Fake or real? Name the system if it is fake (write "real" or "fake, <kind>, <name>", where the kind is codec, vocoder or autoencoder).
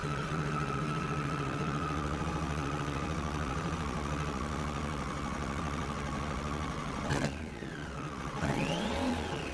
fake, vocoder, WaveNeXt